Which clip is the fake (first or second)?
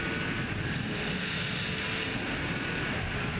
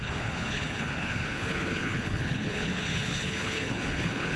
second